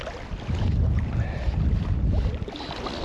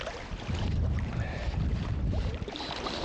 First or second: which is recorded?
first